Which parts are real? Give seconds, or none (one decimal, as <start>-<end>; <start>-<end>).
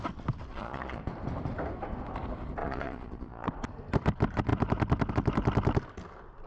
0.0-0.5; 1.0-2.6; 3.5-6.5